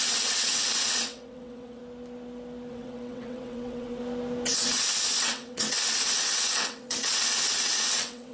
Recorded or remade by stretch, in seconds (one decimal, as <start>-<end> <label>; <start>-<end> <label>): 0.0-1.8 remade; 1.8-2.7 recorded; 2.7-4.0 remade; 4.0-4.5 recorded; 4.5-8.3 remade